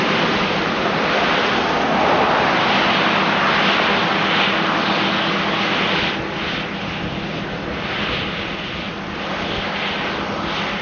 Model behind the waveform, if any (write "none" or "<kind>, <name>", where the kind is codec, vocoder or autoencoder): none